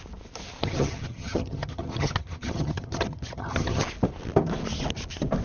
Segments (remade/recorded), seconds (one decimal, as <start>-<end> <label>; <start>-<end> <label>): 0.0-0.6 recorded; 0.6-3.8 remade; 3.8-5.4 recorded